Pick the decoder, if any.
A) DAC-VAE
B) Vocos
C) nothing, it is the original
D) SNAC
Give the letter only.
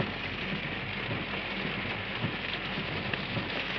C